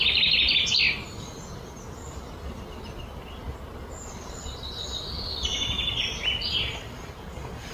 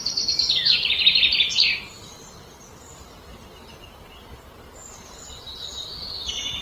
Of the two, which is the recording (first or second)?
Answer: first